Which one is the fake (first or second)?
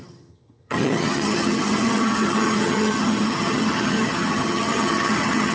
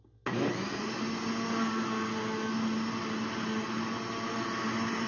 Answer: first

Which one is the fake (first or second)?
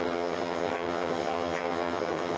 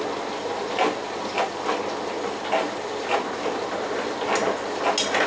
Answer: first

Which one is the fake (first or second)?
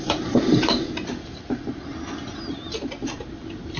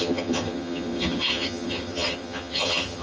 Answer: second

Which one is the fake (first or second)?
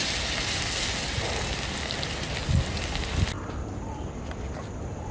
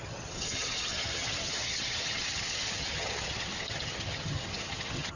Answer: second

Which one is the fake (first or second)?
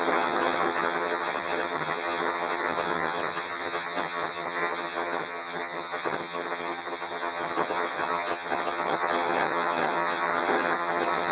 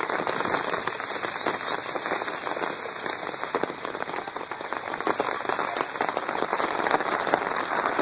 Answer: first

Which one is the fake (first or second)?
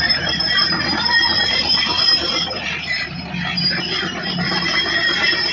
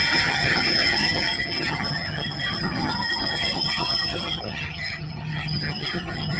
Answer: second